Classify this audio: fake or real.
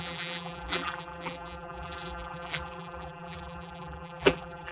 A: fake